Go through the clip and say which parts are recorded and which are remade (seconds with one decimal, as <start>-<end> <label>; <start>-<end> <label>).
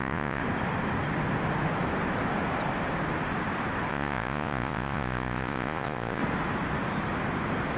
0.0-0.4 remade; 0.4-3.9 recorded; 3.9-6.2 remade; 6.2-7.8 recorded